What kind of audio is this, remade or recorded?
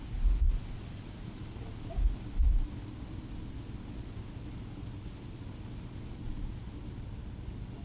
recorded